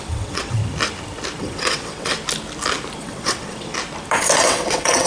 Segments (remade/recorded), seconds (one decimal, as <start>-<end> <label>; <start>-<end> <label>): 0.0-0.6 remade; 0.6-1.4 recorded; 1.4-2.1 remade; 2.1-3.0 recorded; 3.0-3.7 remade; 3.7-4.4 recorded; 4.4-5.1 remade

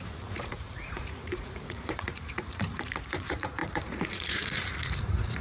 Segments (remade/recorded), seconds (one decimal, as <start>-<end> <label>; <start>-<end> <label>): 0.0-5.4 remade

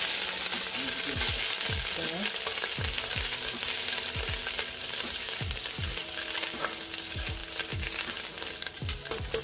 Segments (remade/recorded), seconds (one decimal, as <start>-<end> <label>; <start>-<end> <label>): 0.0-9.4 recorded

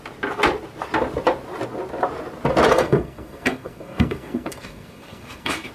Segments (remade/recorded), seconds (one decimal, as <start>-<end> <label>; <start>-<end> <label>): 0.0-2.7 recorded; 2.7-5.7 remade

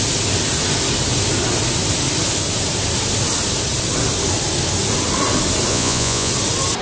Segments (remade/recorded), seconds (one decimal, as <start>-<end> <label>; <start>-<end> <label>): 0.0-5.7 recorded; 5.7-6.3 remade; 6.3-6.8 recorded

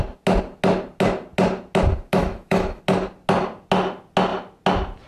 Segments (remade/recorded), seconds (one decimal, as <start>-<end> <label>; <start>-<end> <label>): 0.0-2.2 recorded; 2.2-2.8 remade; 2.8-5.1 recorded